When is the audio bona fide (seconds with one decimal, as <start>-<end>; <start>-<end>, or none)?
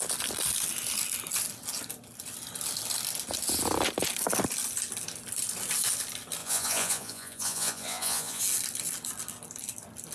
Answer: 0.0-6.4; 8.4-10.1